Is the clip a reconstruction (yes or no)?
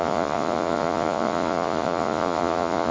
yes